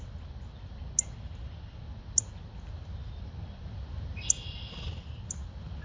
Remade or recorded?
recorded